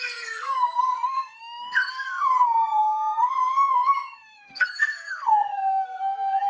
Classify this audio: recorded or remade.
remade